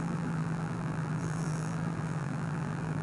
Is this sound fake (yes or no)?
yes